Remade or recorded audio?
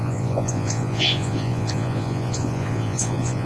remade